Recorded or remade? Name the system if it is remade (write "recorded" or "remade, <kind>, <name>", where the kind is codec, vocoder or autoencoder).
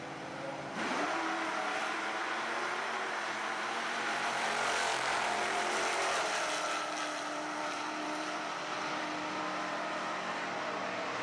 remade, vocoder, BigVGAN v2